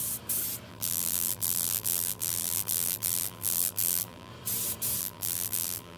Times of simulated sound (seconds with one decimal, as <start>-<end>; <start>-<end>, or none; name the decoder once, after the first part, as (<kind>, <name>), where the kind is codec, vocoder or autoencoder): 0.7-4.3 (vocoder, BigVGAN v2); 5.0-6.0